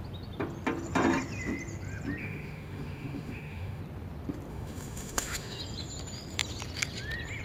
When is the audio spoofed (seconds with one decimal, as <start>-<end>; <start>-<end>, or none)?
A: 2.2-3.8; 4.5-5.6